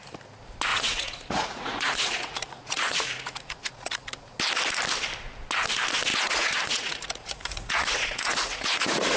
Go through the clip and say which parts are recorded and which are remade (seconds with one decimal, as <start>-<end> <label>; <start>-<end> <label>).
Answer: 0.0-0.7 recorded; 0.7-4.4 remade; 4.4-6.1 recorded; 6.1-9.2 remade